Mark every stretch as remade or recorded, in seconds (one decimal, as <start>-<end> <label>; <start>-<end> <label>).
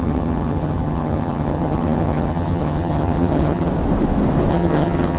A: 0.0-3.7 remade; 3.7-4.5 recorded; 4.5-5.2 remade